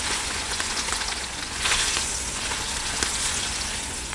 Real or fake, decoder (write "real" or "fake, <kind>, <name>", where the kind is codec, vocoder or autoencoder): fake, vocoder, Vocos